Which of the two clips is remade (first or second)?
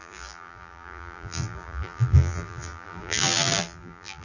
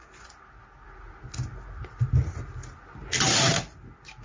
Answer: first